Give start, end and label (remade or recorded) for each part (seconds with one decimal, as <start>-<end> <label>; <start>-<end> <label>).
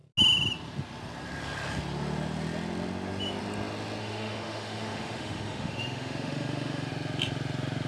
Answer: 0.0-4.0 recorded; 4.0-6.9 remade; 6.9-7.9 recorded